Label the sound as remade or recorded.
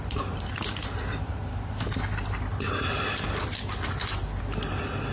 remade